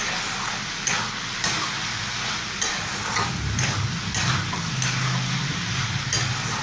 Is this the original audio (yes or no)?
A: yes